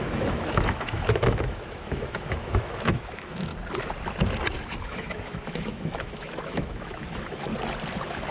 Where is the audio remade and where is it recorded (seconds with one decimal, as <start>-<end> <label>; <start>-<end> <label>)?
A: 0.0-3.5 remade; 3.5-4.8 recorded; 4.8-7.5 remade; 7.5-8.3 recorded